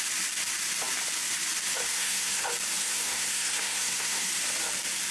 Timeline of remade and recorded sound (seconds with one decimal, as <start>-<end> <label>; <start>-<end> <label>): 0.0-1.9 recorded; 1.9-2.4 remade; 2.4-2.8 recorded; 2.8-4.3 remade; 4.3-5.1 recorded